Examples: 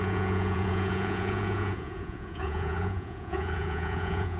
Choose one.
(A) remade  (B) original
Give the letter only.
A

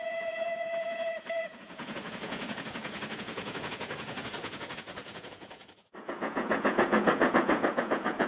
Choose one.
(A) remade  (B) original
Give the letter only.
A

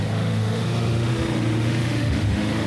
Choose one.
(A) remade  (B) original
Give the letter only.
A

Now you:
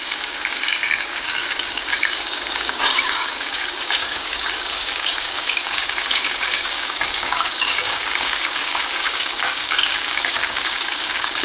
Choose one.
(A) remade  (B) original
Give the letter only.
A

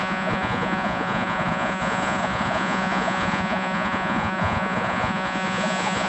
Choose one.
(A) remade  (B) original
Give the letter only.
A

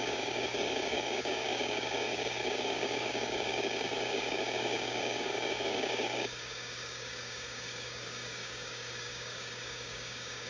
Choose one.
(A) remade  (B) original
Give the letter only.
A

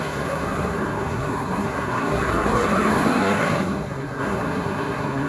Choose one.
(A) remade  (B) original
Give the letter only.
A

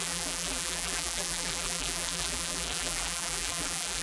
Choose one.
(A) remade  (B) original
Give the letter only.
A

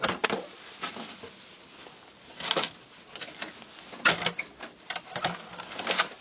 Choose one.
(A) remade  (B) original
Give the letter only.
B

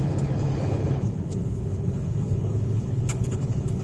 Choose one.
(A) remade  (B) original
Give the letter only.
A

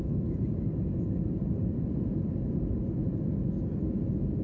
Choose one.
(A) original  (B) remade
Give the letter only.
A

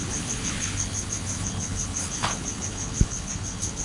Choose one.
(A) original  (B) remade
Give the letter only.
B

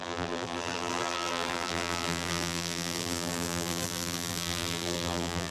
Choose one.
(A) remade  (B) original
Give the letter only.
A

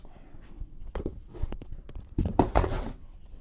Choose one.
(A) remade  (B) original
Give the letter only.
A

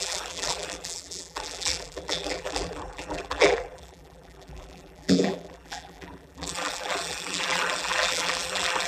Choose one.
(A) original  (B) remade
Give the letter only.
B